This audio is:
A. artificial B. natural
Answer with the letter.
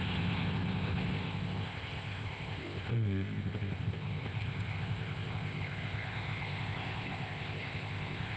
A